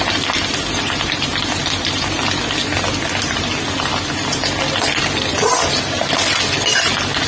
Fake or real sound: real